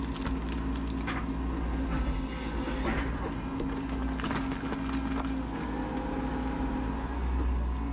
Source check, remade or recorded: recorded